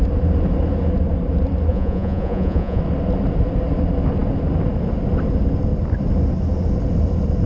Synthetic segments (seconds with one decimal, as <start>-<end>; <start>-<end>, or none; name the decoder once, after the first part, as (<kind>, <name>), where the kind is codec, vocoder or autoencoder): 1.7-2.8 (vocoder, Vocos)